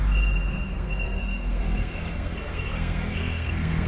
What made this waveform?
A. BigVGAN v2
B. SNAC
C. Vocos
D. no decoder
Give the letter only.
B